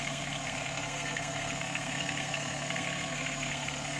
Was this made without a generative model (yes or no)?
no